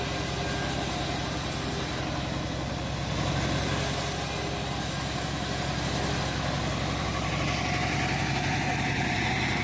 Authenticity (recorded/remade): recorded